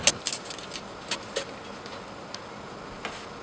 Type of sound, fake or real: real